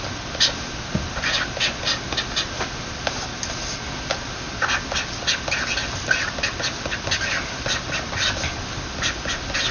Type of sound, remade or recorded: recorded